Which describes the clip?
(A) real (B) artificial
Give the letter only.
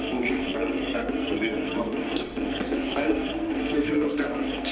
B